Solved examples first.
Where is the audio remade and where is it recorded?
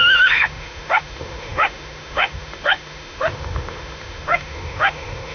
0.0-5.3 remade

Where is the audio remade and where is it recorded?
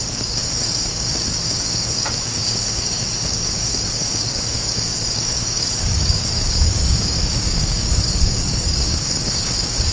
0.0-9.9 remade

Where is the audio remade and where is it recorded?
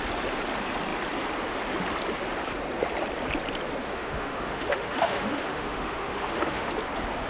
0.0-3.8 recorded; 3.8-6.7 remade; 6.7-7.3 recorded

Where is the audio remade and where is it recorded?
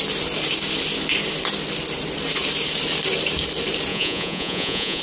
0.0-3.9 recorded; 3.9-5.0 remade